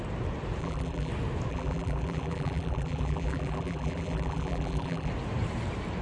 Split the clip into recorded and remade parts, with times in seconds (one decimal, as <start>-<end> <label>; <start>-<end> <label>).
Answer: 0.0-0.6 recorded; 0.6-1.1 remade; 1.1-1.5 recorded; 1.5-5.1 remade; 5.1-6.0 recorded